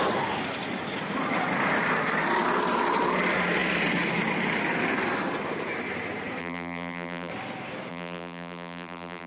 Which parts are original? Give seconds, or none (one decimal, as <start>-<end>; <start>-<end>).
0.0-6.4; 7.3-7.9